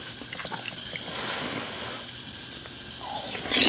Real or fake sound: real